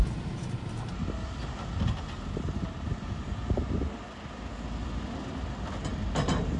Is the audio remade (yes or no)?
no